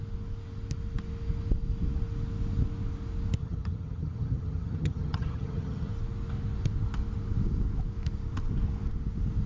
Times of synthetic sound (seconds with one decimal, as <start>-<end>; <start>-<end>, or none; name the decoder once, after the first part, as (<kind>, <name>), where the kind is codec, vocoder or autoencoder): 3.4-5.9 (vocoder, HiFi-GAN)